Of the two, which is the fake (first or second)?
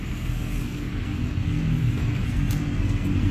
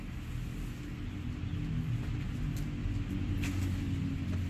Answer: first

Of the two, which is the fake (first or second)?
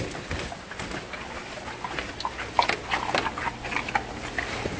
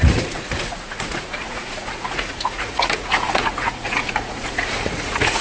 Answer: second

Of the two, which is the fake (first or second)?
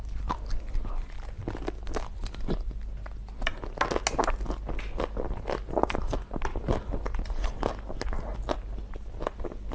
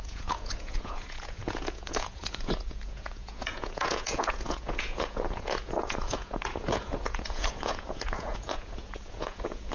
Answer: second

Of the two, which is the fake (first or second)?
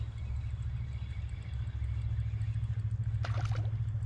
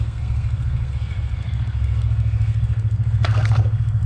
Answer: second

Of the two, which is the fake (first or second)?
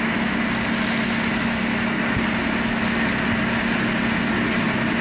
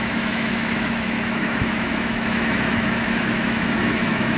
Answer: second